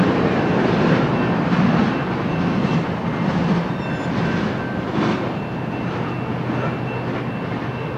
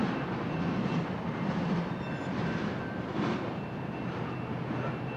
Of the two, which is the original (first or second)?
first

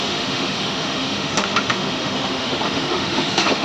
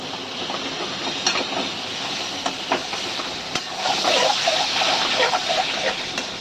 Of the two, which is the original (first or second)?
second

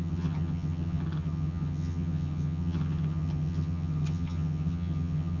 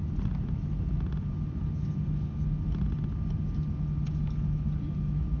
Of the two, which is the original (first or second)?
second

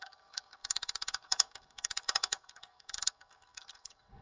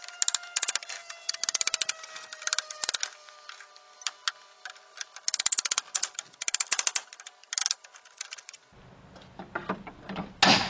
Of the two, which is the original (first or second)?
second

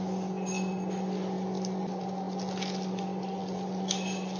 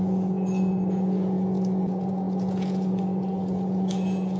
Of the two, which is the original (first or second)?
first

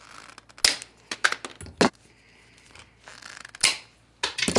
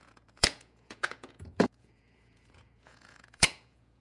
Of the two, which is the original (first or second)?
first